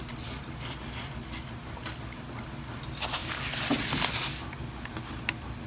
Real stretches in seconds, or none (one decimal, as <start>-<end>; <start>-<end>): 0.0-5.7

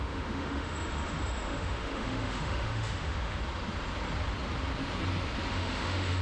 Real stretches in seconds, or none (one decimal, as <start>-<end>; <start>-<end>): 3.4-5.5

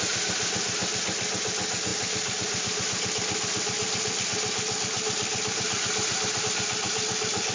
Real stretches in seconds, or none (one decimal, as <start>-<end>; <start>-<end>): 0.0-7.5